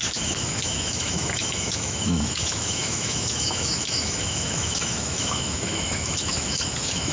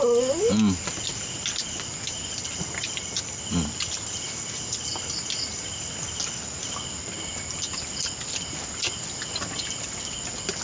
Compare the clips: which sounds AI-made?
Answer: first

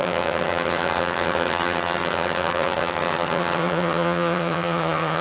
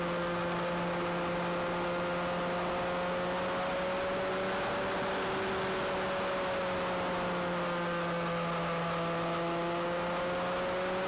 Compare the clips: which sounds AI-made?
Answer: first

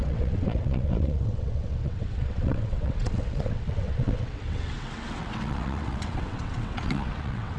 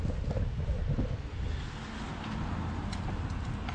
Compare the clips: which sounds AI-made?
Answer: first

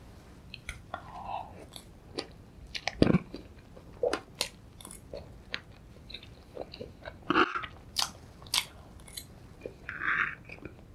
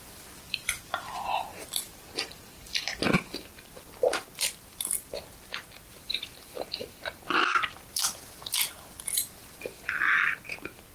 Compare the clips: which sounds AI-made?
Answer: second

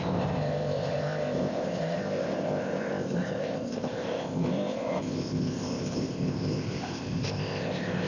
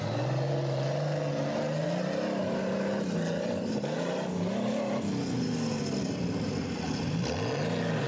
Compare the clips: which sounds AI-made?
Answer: first